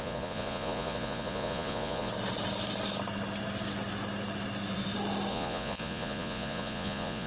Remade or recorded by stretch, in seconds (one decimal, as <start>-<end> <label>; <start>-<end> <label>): 0.0-2.1 remade; 2.1-5.3 recorded; 5.3-7.3 remade